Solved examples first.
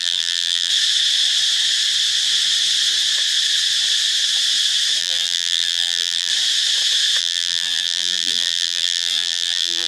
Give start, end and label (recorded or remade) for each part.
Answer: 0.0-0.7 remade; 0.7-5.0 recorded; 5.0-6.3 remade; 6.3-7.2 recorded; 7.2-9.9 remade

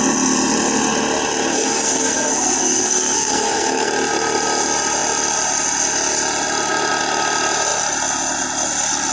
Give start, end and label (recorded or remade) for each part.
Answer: 0.0-1.5 recorded; 1.5-3.9 remade; 3.9-9.1 recorded

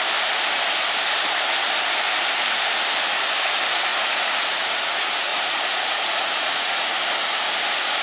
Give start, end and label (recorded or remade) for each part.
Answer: 0.0-3.9 recorded; 3.9-4.8 remade; 4.8-5.3 recorded; 5.3-7.0 remade; 7.0-8.0 recorded

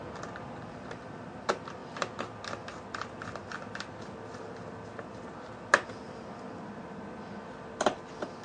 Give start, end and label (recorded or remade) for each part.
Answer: 0.0-8.4 recorded

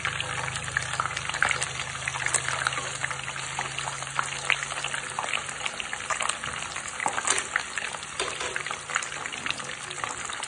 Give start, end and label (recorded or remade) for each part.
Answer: 0.0-10.5 recorded

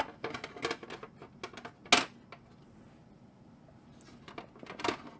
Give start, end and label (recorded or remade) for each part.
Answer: 0.0-5.2 recorded

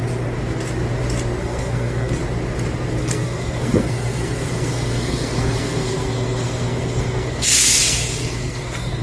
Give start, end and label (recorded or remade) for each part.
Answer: 0.0-1.4 recorded; 1.4-2.2 remade; 2.2-3.0 recorded; 3.0-9.0 remade